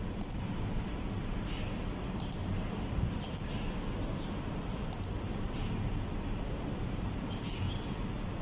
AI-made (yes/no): no